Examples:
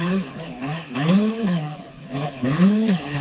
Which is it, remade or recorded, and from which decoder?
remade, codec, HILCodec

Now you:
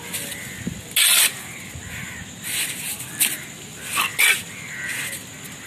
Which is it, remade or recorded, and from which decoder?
recorded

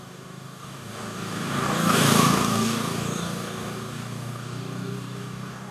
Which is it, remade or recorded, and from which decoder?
remade, codec, DAC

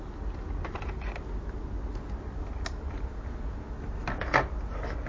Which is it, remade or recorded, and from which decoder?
recorded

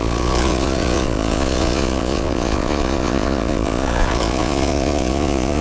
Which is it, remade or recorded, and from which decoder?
remade, vocoder, Vocos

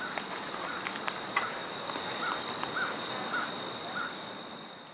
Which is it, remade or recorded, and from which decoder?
recorded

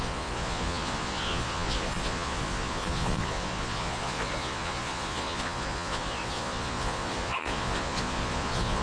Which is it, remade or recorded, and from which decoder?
remade, vocoder, Vocos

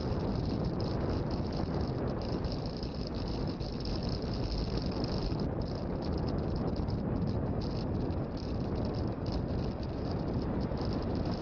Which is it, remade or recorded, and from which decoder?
recorded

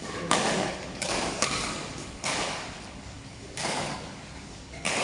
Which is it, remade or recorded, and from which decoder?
remade, codec, DAC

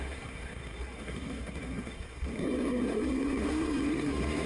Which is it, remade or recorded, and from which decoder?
remade, codec, SNAC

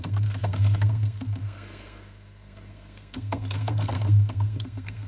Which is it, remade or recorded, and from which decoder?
remade, codec, SNAC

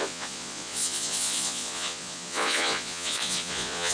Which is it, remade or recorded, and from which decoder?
remade, vocoder, Vocos